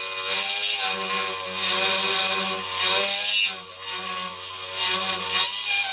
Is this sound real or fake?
real